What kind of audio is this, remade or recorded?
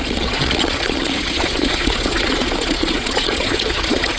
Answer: remade